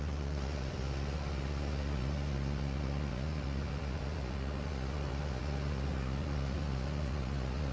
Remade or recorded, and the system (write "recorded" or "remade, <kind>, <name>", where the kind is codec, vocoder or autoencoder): remade, vocoder, Vocos